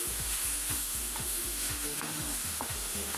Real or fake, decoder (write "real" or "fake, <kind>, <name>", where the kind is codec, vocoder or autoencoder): fake, autoencoder, DAC-VAE